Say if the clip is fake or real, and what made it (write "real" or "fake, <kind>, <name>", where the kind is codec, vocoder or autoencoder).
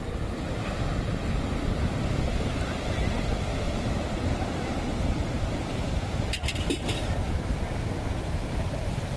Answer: real